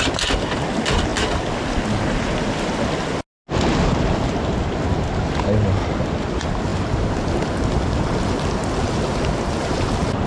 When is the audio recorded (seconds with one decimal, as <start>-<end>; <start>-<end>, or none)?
0.0-10.3